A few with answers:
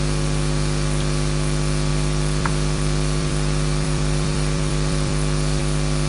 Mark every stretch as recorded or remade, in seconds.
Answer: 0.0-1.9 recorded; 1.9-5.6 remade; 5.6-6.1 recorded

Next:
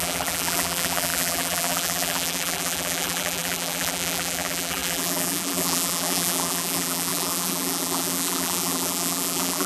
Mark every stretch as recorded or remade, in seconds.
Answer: 0.0-9.7 remade

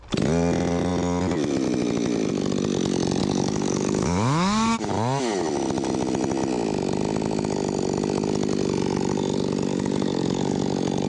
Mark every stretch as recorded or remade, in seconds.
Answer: 0.0-3.2 recorded; 3.2-4.9 remade; 4.9-9.7 recorded; 9.7-10.6 remade; 10.6-11.1 recorded

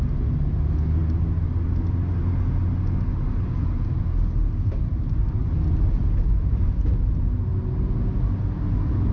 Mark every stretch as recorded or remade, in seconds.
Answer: 0.0-9.1 recorded

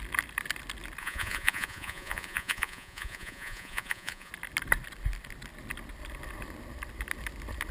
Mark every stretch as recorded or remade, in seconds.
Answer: 0.0-1.0 recorded; 1.0-4.3 remade; 4.3-7.7 recorded

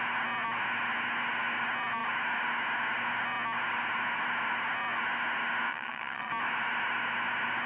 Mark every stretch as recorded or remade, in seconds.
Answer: 0.0-5.7 recorded; 5.7-6.3 remade; 6.3-7.7 recorded

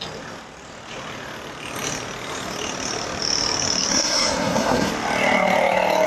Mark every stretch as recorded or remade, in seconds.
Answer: 0.0-3.9 recorded; 3.9-4.9 remade; 4.9-6.1 recorded

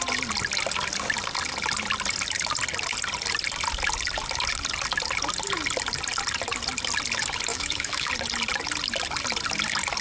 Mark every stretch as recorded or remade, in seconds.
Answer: 0.0-7.5 recorded; 7.5-8.1 remade; 8.1-10.0 recorded